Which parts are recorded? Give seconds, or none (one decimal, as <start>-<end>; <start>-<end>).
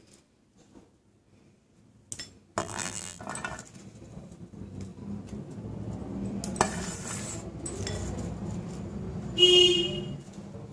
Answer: 0.0-2.6; 3.2-10.7